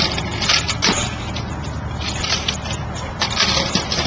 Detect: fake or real real